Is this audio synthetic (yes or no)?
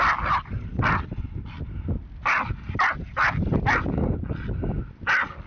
no